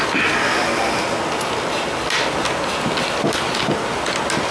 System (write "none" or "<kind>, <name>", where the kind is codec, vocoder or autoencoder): none